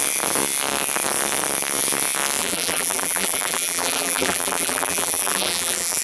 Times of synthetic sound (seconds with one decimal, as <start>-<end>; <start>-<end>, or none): 2.4-6.0